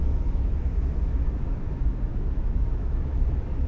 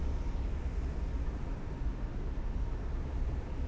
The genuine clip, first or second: second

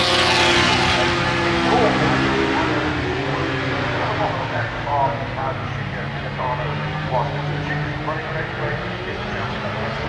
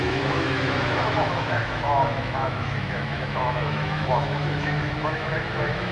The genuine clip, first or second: first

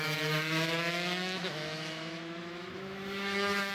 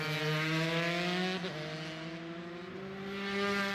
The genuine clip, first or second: second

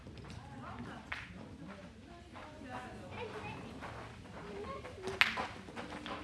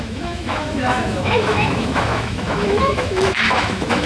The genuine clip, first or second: first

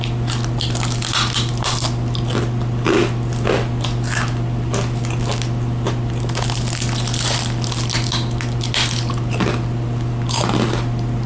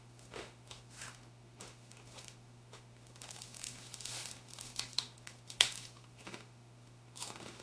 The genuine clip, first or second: first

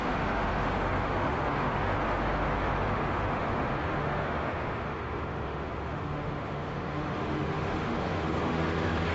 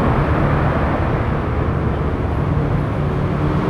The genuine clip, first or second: second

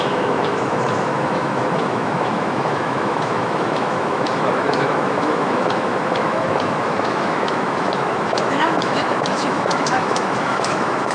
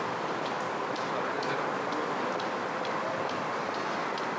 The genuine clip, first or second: second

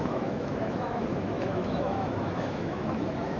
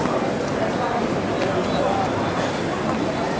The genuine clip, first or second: second